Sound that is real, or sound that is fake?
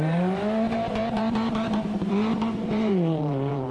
fake